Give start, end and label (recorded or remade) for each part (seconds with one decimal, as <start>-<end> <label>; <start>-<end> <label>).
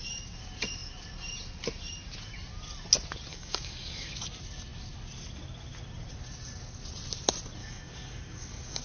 0.0-3.3 recorded; 3.3-4.1 remade; 4.1-7.6 recorded; 7.6-8.8 remade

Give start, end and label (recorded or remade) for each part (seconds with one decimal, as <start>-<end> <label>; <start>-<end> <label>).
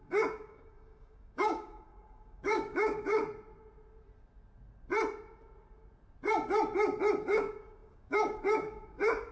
0.0-3.2 remade; 3.2-7.2 recorded; 7.2-9.3 remade